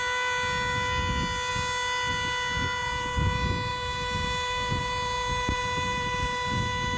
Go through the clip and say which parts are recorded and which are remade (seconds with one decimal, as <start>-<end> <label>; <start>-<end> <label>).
0.0-7.0 recorded